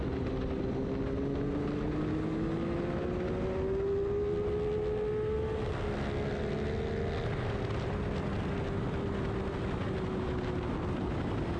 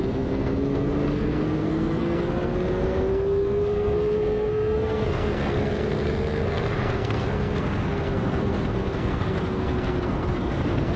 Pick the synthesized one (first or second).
second